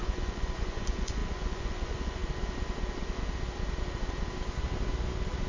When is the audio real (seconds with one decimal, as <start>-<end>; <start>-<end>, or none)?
2.2-5.5